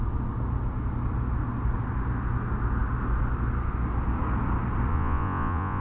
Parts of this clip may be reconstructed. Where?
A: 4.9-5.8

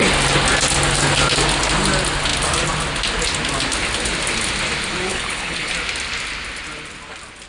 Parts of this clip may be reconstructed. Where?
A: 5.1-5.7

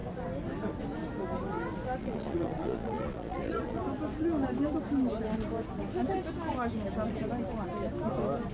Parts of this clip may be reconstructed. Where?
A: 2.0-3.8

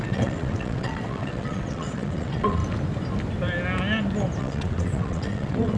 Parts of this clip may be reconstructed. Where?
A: 0.0-2.6; 4.4-5.8